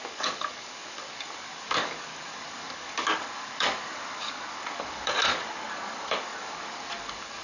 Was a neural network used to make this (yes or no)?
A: yes